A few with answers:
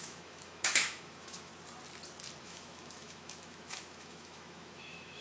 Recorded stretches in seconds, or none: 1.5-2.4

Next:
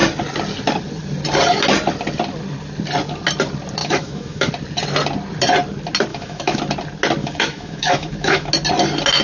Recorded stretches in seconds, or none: 0.0-3.8; 4.5-6.1; 6.6-7.2; 8.5-9.2